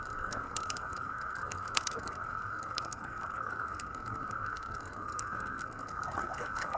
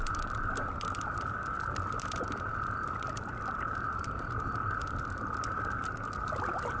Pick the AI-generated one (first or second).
first